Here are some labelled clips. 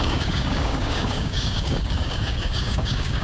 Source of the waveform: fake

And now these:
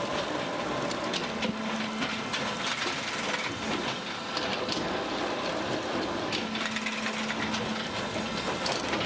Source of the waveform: real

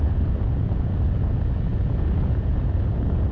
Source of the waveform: fake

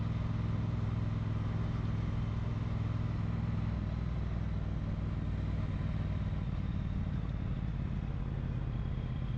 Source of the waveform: real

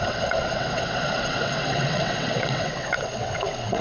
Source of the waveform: fake